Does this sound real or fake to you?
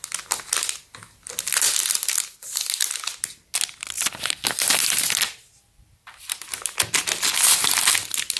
real